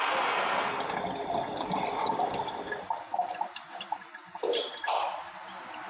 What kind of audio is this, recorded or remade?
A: recorded